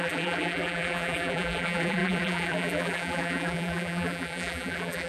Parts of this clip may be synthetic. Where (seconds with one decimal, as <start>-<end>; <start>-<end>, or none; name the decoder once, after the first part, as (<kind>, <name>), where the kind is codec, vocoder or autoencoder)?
0.0-5.1 (vocoder, BigVGAN v2)